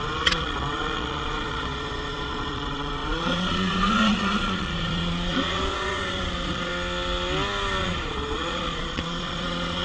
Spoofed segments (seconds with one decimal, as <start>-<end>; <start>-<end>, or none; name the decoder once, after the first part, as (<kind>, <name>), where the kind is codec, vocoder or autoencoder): 0.0-6.7 (vocoder, Vocos); 7.8-9.8